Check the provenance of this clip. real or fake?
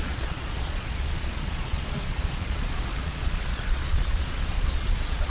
fake